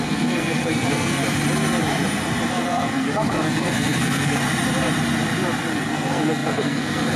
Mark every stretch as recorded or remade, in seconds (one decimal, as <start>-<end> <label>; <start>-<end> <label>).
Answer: 0.0-1.2 remade; 1.2-2.5 recorded; 2.5-4.4 remade; 4.4-5.7 recorded; 5.7-7.2 remade